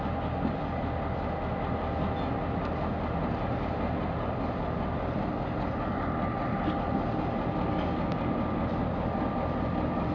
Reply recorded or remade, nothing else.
recorded